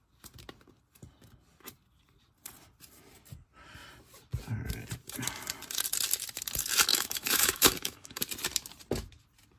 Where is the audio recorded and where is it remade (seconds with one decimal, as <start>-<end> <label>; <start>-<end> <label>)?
0.0-6.9 recorded; 6.9-8.2 remade; 8.2-9.6 recorded